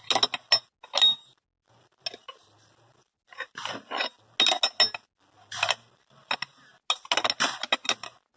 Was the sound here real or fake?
real